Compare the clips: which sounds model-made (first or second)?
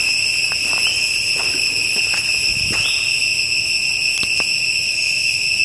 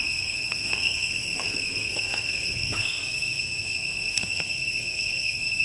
second